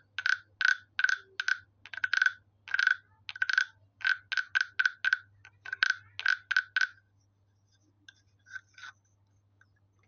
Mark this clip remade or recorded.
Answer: recorded